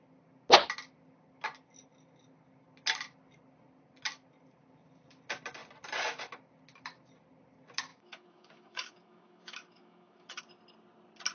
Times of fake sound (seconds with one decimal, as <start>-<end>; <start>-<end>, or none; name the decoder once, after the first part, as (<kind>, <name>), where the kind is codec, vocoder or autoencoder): 7.9-10.4 (autoencoder, DAC-VAE)